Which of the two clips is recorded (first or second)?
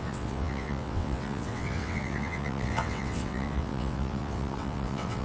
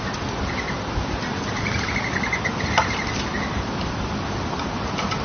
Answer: second